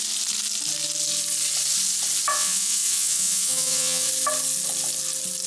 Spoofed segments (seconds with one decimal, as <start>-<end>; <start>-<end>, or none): 2.3-4.1